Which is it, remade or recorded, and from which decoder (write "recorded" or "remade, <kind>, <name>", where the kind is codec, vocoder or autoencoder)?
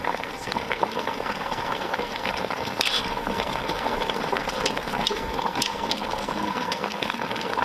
remade, codec, SNAC